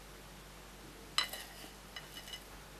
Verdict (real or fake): real